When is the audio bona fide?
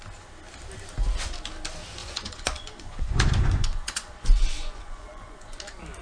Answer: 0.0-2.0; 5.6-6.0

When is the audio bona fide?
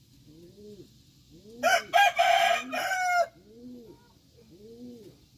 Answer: 0.0-5.4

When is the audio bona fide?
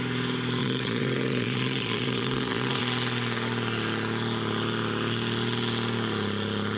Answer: 0.0-0.6; 2.8-6.8